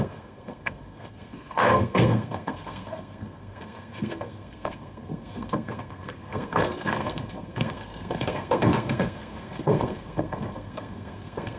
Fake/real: fake